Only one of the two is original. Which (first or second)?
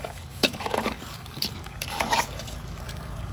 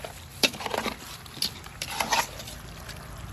second